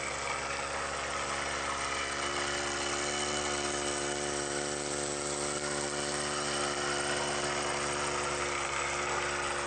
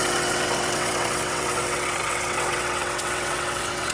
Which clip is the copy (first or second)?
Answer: second